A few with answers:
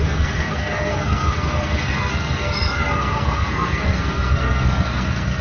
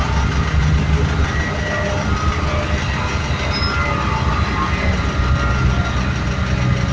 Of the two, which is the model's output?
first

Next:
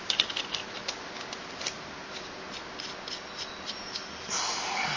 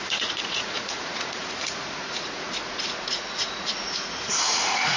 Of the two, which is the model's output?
second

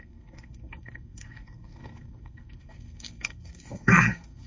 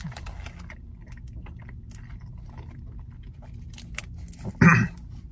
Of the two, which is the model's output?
first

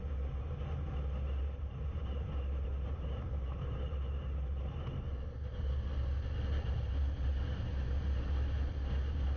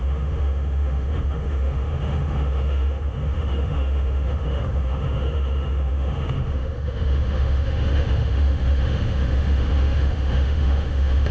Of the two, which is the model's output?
second